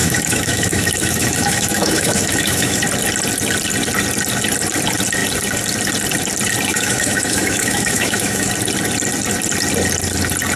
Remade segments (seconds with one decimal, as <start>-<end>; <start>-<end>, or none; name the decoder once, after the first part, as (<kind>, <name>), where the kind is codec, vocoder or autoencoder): 0.0-2.8 (autoencoder, DAC-VAE); 6.7-8.5